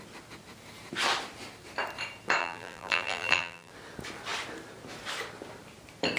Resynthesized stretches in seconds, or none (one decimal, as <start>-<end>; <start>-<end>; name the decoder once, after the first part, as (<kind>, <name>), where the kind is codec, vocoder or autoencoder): 2.4-3.7 (vocoder, BigVGAN v2)